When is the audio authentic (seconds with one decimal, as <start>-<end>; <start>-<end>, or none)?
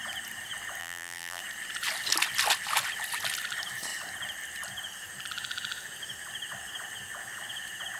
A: 0.0-0.8; 1.4-8.0